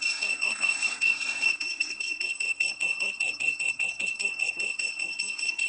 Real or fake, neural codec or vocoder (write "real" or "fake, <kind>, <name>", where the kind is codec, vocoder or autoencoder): fake, codec, SNAC